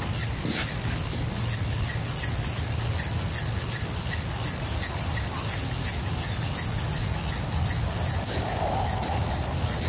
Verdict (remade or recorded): recorded